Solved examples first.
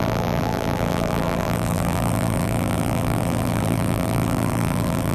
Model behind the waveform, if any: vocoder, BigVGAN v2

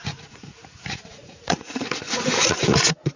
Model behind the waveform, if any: vocoder, Vocos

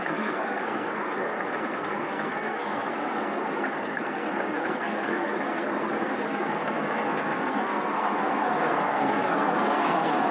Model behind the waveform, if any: codec, SNAC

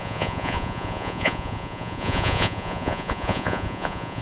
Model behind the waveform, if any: vocoder, Vocos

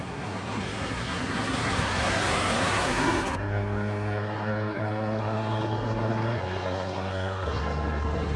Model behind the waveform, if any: codec, SNAC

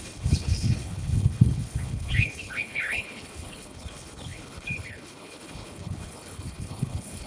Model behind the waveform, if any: codec, HILCodec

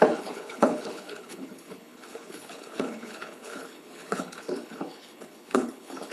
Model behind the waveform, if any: codec, HILCodec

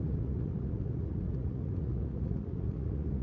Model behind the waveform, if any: vocoder, Vocos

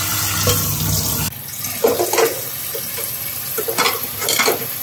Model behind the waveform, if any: none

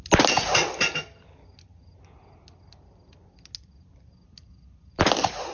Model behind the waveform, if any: none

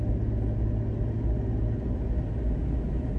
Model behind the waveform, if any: none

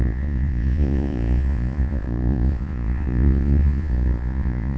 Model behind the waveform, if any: vocoder, Vocos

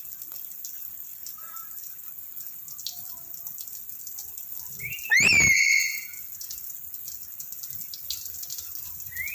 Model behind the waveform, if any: none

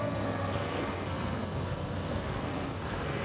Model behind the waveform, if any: codec, SNAC